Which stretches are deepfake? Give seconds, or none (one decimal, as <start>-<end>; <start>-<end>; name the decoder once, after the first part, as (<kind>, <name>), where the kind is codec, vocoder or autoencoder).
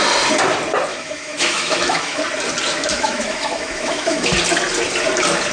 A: 0.9-2.2 (autoencoder, DAC-VAE); 2.9-4.3